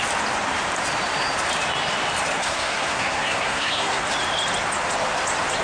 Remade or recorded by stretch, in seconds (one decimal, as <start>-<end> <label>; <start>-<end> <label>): 0.0-2.4 recorded; 2.4-4.0 remade; 4.0-5.6 recorded